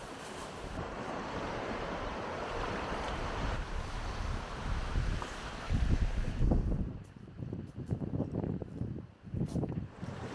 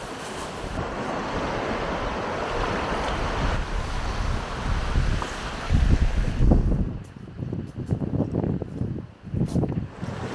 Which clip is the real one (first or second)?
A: second